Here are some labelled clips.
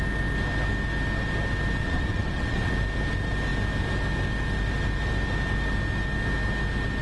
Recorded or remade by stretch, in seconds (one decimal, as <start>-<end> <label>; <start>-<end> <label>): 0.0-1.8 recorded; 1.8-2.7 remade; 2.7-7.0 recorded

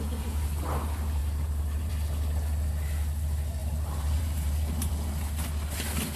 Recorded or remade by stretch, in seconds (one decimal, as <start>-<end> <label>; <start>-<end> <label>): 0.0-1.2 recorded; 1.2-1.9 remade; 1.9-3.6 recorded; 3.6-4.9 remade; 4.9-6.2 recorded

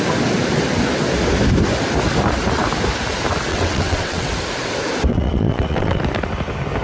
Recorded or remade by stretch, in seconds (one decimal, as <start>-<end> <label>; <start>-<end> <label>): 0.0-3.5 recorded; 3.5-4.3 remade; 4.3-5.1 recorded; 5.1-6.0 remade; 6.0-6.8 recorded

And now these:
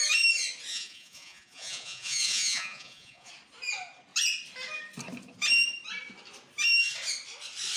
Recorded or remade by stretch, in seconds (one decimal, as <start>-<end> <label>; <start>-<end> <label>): 0.0-0.7 recorded; 0.7-3.3 remade; 3.3-7.8 recorded

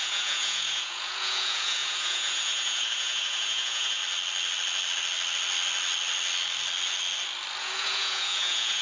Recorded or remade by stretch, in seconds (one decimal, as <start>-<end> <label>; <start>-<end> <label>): 0.0-4.0 remade; 4.0-7.6 recorded; 7.6-8.8 remade